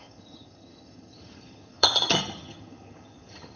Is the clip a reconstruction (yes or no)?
yes